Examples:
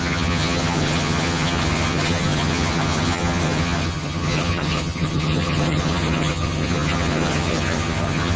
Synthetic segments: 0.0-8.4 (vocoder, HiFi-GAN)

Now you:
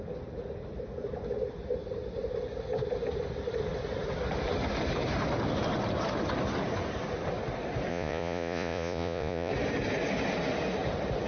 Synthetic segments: 7.9-9.5 (vocoder, Vocos)

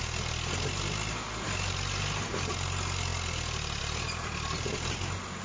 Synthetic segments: none

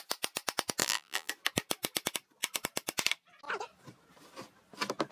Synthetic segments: 0.8-1.3 (vocoder, BigVGAN v2)

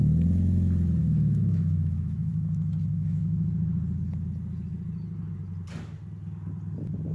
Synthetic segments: 1.0-2.5 (autoencoder, DAC-VAE); 2.9-3.5

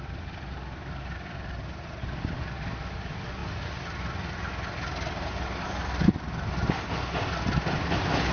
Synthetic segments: none